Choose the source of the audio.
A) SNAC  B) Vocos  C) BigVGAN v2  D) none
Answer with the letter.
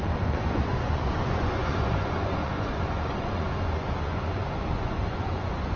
B